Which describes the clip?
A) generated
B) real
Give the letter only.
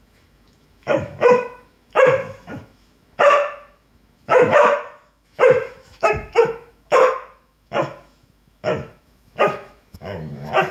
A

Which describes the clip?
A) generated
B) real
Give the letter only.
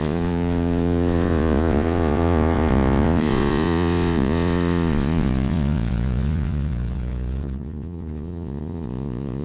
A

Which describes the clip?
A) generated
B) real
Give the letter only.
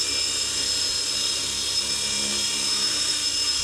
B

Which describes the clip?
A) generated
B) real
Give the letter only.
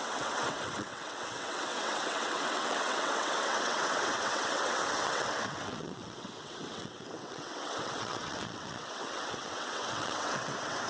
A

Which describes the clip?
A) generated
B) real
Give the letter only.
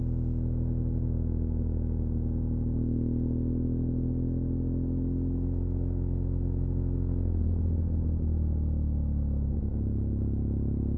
B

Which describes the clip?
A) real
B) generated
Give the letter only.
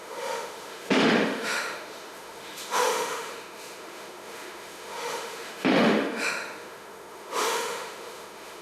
B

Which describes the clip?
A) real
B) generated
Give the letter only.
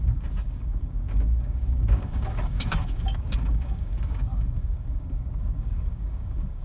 B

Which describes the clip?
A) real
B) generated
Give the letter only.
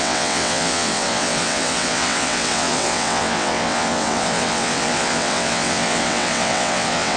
B